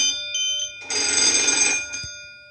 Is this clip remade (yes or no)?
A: no